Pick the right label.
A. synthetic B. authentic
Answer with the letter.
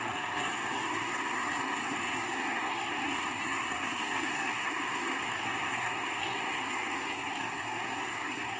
A